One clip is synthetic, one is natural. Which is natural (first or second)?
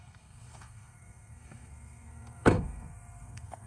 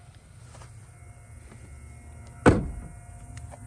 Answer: second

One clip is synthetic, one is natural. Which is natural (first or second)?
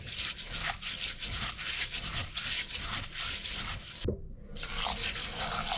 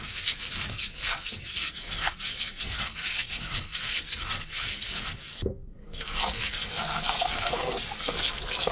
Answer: first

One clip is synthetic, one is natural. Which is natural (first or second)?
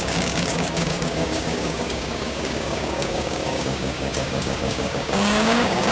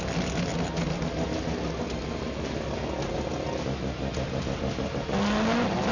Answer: second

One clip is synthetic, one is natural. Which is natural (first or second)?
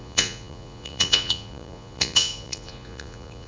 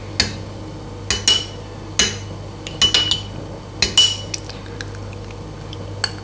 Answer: second